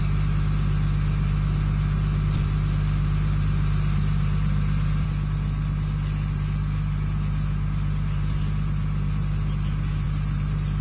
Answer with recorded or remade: recorded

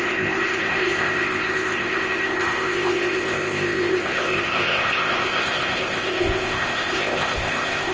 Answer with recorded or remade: remade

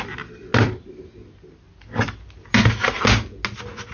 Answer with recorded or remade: recorded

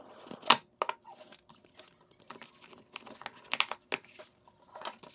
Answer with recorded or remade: recorded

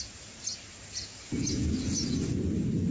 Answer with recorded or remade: recorded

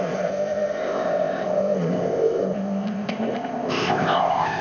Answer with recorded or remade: remade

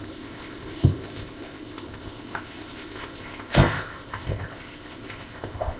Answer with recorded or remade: remade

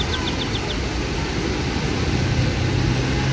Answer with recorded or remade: recorded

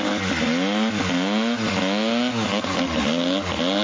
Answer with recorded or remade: recorded